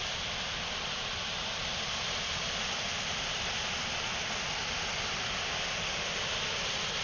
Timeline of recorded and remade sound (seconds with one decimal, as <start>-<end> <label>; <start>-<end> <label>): 0.0-7.0 recorded